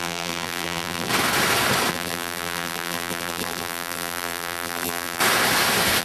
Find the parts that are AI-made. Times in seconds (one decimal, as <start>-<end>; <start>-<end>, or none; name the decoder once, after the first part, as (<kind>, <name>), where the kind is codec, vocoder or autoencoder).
0.0-1.1 (vocoder, BigVGAN v2); 1.9-5.2